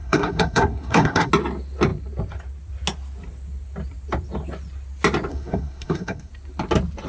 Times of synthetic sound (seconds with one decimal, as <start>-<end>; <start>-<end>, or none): 0.0-1.3; 5.3-6.3